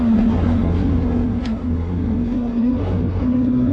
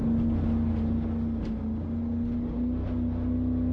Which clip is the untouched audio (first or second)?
second